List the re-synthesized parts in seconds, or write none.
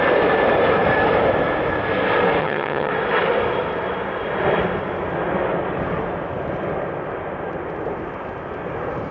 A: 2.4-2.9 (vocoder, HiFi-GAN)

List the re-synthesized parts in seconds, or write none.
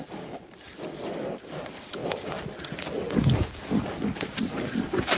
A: 0.0-2.0 (vocoder, BigVGAN v2)